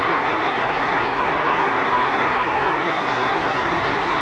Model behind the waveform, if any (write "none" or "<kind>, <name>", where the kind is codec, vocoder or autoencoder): codec, SNAC